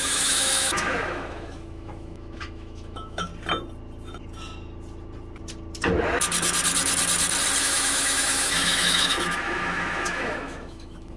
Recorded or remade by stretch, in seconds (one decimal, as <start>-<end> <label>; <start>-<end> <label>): 0.0-3.3 remade; 3.3-7.6 recorded; 7.6-11.2 remade